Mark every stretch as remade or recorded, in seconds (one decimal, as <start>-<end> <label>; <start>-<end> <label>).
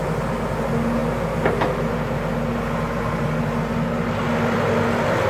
0.0-5.3 recorded